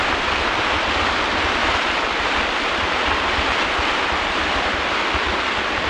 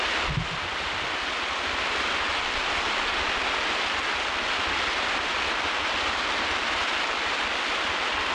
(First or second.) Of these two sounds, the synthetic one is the first